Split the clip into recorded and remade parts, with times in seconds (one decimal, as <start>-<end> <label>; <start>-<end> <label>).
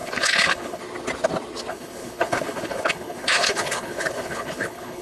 0.0-0.8 remade; 0.8-1.7 recorded; 1.7-5.0 remade